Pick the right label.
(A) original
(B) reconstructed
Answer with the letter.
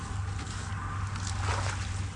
A